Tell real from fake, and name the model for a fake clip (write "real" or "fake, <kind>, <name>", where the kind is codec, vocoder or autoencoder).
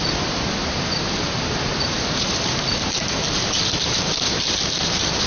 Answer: fake, vocoder, BigVGAN v2